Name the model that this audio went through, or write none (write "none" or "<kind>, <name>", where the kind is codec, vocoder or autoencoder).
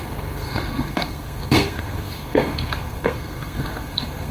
codec, SNAC